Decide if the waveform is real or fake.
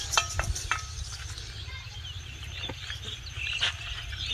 real